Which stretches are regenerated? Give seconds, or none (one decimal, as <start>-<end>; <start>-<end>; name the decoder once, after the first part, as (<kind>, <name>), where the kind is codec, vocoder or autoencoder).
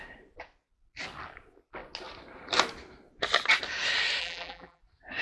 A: 4.2-4.8 (vocoder, BigVGAN v2)